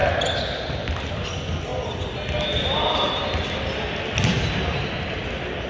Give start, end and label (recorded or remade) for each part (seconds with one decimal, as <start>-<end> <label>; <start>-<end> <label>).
0.0-5.7 recorded